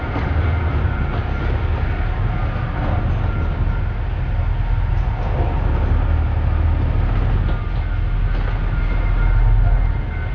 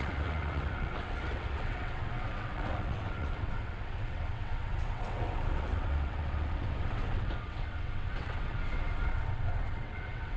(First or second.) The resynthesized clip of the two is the second